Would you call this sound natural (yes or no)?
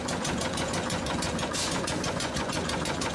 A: no